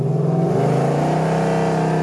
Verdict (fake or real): real